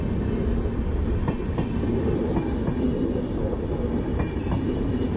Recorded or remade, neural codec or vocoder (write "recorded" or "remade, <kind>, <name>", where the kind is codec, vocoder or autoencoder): recorded